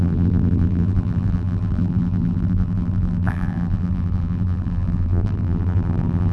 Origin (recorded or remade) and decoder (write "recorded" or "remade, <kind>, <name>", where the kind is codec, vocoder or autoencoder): remade, vocoder, BigVGAN v2